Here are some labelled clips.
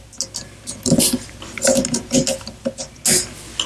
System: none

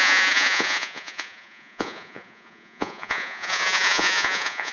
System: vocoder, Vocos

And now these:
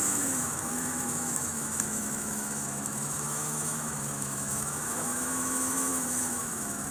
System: autoencoder, DAC-VAE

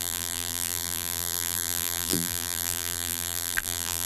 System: vocoder, BigVGAN v2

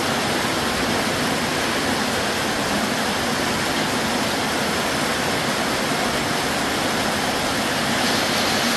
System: none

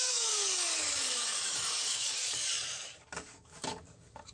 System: codec, DAC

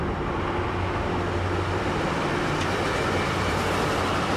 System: vocoder, BigVGAN v2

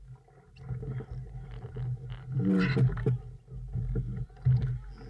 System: none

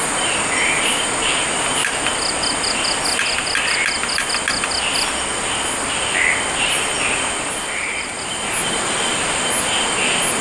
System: none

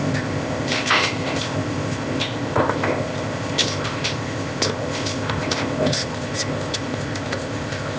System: codec, ZipCodec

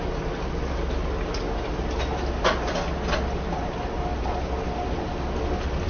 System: none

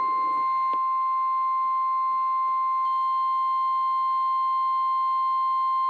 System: none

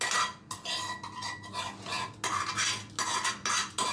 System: none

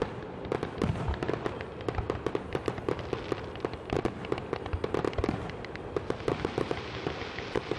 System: none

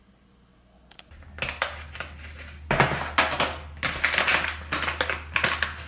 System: none